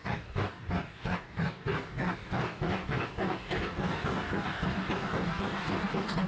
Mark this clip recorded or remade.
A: remade